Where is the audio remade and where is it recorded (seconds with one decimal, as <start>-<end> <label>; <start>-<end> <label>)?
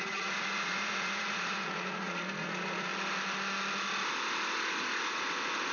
0.0-2.9 remade; 2.9-4.1 recorded; 4.1-5.7 remade